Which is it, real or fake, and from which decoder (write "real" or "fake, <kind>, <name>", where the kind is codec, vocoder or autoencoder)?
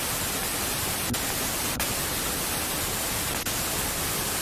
fake, vocoder, BigVGAN v2